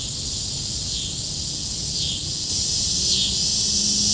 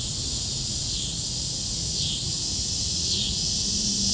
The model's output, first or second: second